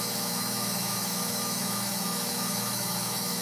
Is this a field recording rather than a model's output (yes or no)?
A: no